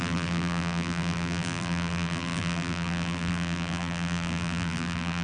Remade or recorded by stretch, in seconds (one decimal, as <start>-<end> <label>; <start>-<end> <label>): 0.0-5.2 remade